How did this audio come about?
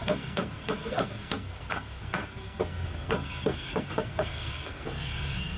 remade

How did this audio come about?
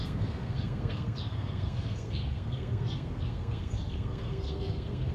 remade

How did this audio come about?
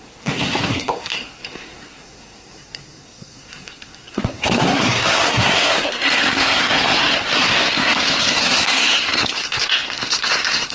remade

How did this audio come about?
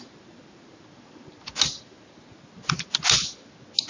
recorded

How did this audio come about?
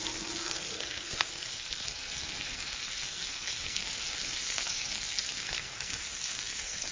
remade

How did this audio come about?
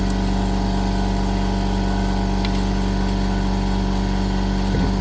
recorded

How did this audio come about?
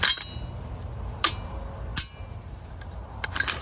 recorded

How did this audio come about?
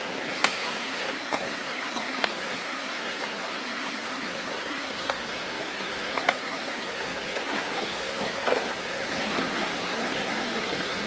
remade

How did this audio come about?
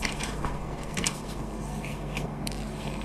remade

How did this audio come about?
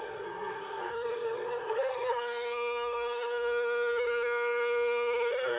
remade